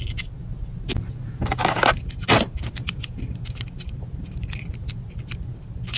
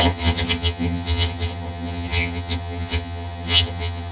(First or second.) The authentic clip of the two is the first